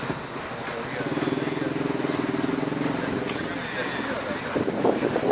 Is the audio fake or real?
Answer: real